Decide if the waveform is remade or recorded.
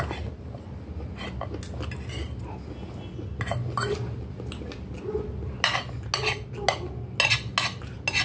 recorded